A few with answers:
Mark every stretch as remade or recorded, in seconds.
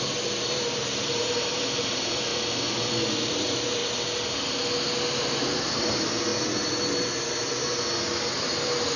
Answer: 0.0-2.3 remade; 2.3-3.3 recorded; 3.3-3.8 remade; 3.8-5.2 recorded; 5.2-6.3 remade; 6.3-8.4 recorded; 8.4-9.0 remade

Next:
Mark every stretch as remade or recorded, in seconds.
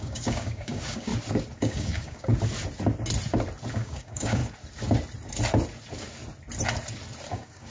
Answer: 0.0-1.1 remade; 1.1-1.6 recorded; 1.6-2.3 remade; 2.3-3.7 recorded; 3.7-4.4 remade; 4.4-7.3 recorded; 7.3-7.7 remade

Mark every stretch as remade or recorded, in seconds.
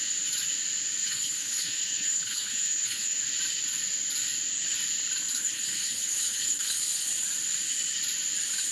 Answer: 0.0-1.0 recorded; 1.0-3.2 remade; 3.2-5.3 recorded; 5.3-7.1 remade; 7.1-8.7 recorded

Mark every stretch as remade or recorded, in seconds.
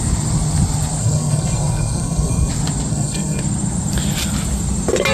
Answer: 0.0-1.0 recorded; 1.0-2.5 remade; 2.5-2.9 recorded; 2.9-3.4 remade; 3.4-5.1 recorded